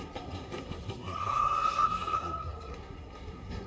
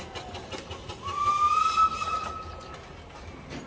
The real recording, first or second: second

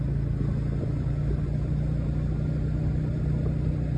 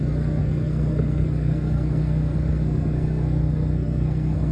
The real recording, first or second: first